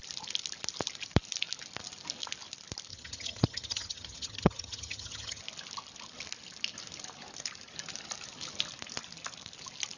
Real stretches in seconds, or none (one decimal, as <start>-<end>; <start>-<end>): 0.0-2.9; 5.4-10.0